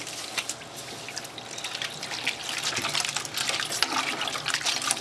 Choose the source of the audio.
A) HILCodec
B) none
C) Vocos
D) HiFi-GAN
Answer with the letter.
B